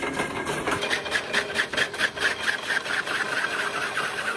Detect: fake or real real